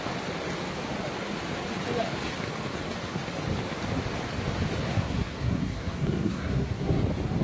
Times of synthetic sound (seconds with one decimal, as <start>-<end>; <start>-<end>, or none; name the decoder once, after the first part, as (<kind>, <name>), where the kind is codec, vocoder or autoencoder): 4.8-7.0 (codec, SNAC)